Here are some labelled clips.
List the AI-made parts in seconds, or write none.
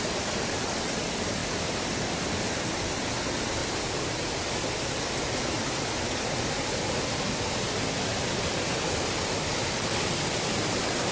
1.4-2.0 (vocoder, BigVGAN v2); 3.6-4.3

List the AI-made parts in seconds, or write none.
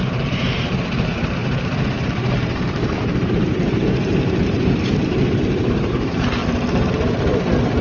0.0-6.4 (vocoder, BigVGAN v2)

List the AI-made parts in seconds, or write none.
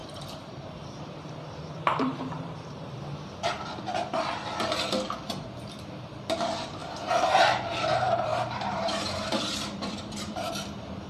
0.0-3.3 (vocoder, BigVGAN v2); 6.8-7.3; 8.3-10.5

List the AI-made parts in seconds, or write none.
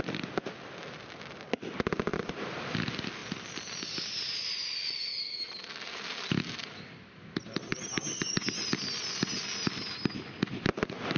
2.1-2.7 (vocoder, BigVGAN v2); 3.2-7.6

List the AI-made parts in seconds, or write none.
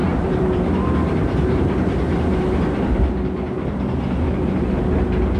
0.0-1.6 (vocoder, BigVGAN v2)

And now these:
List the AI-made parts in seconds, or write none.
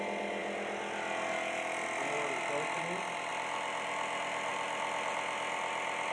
none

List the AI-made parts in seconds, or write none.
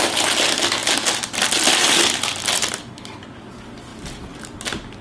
3.9-4.4 (vocoder, BigVGAN v2)